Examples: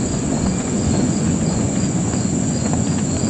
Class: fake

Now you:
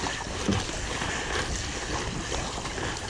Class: real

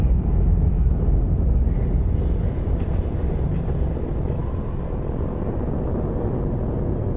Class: real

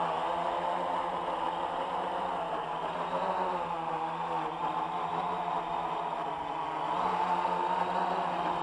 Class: real